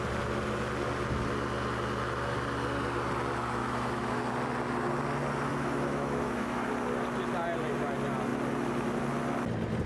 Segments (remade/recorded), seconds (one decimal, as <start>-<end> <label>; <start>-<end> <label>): 0.0-3.6 recorded; 3.6-4.2 remade; 4.2-5.5 recorded; 5.5-6.7 remade; 6.7-9.9 recorded